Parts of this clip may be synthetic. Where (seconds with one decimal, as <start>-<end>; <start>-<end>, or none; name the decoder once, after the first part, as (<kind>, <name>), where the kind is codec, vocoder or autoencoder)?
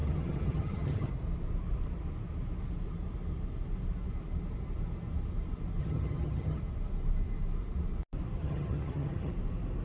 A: 0.0-1.1 (vocoder, HiFi-GAN); 5.8-6.6; 8.4-9.3